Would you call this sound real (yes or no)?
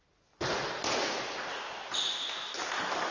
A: yes